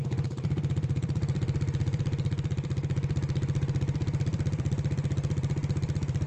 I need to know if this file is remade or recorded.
remade